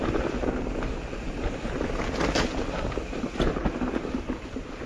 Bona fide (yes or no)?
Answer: yes